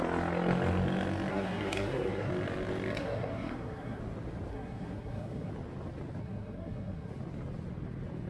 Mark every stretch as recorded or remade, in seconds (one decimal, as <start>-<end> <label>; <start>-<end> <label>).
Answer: 0.0-1.3 recorded; 1.3-2.3 remade; 2.3-3.0 recorded; 3.0-4.0 remade; 4.0-4.5 recorded; 4.5-5.5 remade; 5.5-6.2 recorded; 6.2-7.1 remade; 7.1-8.3 recorded